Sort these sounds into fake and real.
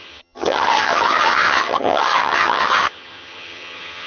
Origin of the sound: fake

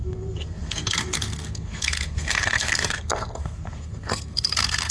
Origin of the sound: fake